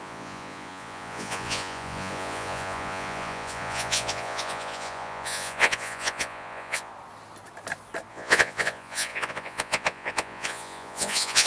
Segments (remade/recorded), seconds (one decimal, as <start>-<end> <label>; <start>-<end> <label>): 0.0-6.9 remade; 6.9-8.1 recorded; 8.1-11.5 remade